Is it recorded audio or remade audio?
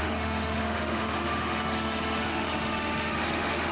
remade